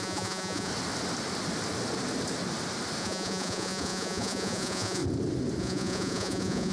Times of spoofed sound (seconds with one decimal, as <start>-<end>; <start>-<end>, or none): 0.0-0.7; 3.0-5.0; 5.6-6.7